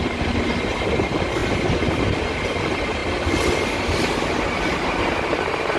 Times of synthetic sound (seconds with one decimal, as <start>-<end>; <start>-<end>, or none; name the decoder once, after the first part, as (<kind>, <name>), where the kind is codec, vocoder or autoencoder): 1.4-2.2 (vocoder, BigVGAN v2)